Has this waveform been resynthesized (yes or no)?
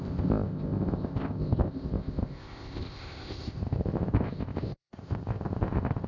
yes